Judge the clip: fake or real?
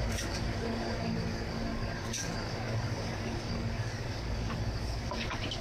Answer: fake